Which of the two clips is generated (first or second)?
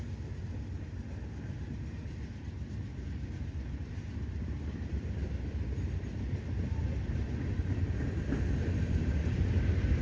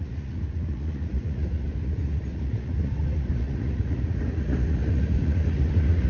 second